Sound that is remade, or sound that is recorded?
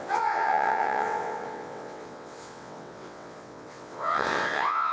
remade